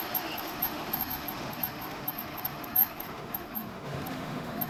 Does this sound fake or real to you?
fake